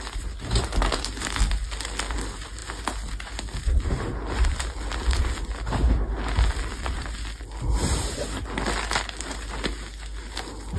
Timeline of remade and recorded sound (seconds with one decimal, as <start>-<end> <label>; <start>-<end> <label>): 0.0-10.8 recorded